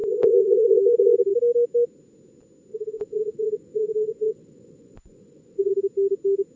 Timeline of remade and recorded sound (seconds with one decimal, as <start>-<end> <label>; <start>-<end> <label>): 0.0-0.8 remade; 0.8-2.7 recorded; 2.7-5.7 remade; 5.7-6.6 recorded